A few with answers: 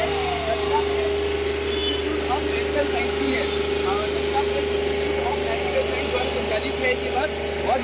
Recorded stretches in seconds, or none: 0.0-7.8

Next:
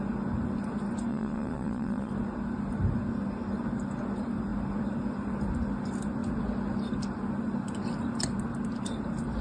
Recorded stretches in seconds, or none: 0.0-1.1; 2.1-9.4

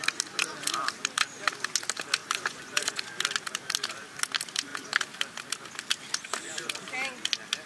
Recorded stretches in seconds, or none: 0.0-2.2; 3.0-7.7

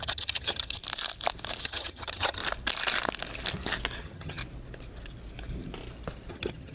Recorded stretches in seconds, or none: 0.8-1.6; 2.4-4.0; 4.4-6.3

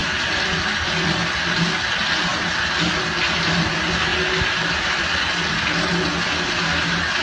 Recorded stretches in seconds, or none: 0.0-7.2

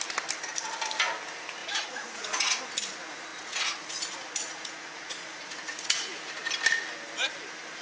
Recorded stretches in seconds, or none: 0.0-1.6; 2.6-3.3; 6.3-7.8

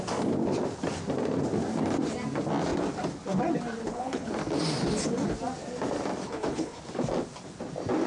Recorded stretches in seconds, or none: 0.0-3.8; 4.3-6.2; 6.8-8.1

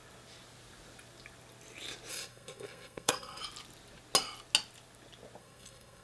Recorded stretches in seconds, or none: 0.0-2.1; 3.4-5.4